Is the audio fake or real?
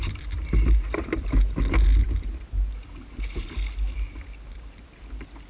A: real